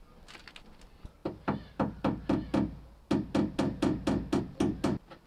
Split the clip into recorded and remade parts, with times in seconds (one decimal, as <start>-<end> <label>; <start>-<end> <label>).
0.0-5.3 recorded